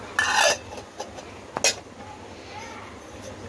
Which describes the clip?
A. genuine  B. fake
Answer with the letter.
A